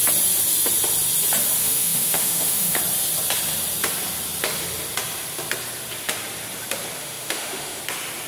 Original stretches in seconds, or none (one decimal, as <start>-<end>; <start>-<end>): 0.0-1.6; 2.8-7.0; 7.8-8.3